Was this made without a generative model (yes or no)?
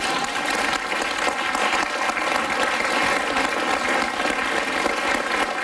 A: yes